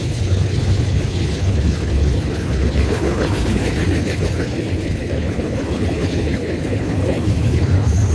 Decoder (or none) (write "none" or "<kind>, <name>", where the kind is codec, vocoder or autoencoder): codec, HILCodec